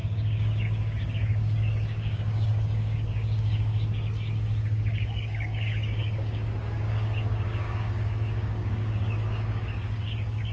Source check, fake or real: fake